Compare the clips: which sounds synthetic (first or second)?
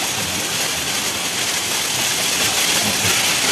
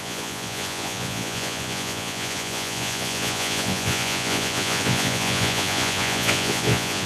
second